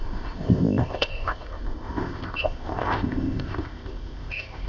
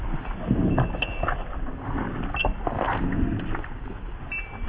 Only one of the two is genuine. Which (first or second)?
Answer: second